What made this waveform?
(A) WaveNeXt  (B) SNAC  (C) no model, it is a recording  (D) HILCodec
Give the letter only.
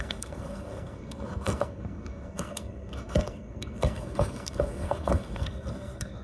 B